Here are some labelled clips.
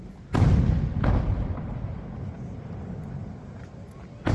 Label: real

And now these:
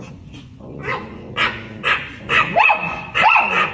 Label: fake